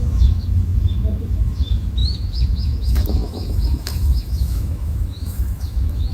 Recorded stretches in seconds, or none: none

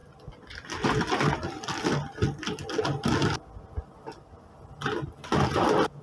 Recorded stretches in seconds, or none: 0.0-6.0

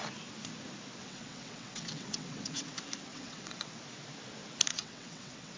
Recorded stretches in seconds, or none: 0.0-1.0; 2.7-3.1; 3.8-4.7

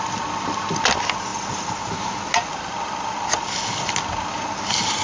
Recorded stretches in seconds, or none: 0.0-5.0

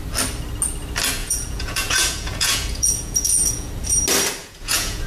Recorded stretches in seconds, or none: 0.0-1.2; 3.7-4.4